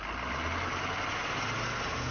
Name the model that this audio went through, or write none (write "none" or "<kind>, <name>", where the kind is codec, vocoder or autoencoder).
none